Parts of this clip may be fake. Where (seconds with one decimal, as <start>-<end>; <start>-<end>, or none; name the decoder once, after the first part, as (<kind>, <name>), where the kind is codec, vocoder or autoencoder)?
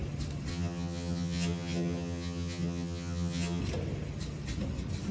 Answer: 0.5-3.6 (vocoder, HiFi-GAN)